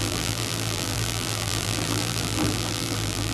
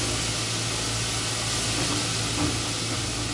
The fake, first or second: first